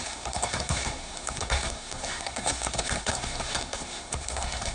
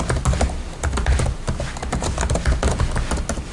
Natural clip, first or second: second